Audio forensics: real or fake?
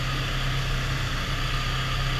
real